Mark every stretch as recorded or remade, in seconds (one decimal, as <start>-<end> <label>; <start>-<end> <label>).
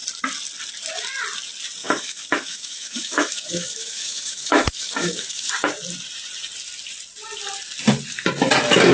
0.0-1.8 recorded; 1.8-5.5 remade; 5.5-8.9 recorded